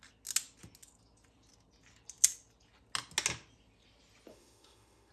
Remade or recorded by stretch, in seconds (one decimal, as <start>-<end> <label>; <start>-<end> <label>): 0.0-4.3 recorded; 4.3-5.1 remade